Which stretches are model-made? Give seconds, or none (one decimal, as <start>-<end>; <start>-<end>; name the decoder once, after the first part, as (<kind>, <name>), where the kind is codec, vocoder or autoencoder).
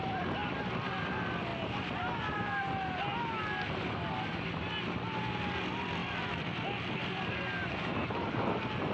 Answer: 0.0-1.5 (vocoder, BigVGAN v2); 5.6-8.9